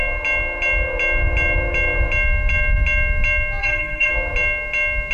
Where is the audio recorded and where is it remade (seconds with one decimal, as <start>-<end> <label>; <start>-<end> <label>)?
0.0-3.6 recorded; 3.6-4.1 remade; 4.1-5.1 recorded